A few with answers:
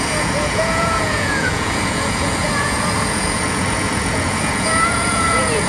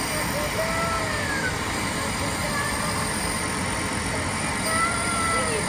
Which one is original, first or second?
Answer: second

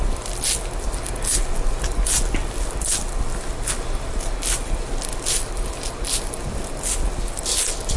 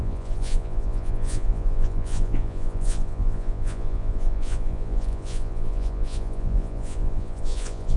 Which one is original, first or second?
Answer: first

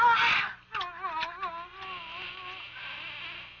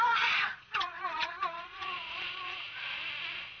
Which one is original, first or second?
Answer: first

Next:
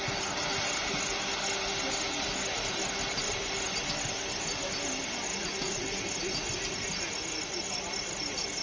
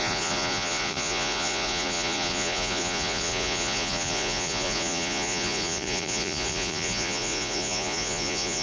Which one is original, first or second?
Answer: first